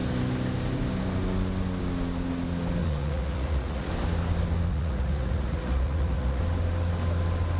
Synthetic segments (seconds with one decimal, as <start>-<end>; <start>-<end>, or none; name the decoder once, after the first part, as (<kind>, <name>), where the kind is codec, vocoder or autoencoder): 2.8-3.9 (vocoder, Vocos); 4.7-6.4